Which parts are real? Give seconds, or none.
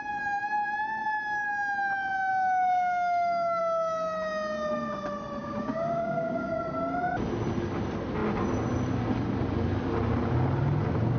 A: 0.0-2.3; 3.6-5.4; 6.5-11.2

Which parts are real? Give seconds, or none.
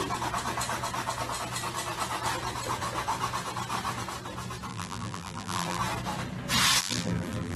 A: 0.0-4.7; 5.8-6.8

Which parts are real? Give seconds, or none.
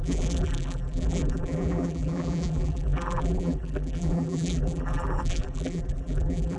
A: none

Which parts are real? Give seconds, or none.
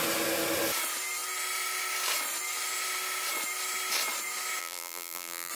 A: 0.0-4.6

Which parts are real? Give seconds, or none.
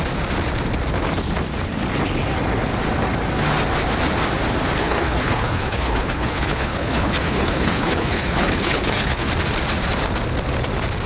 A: 0.0-4.8; 9.3-11.1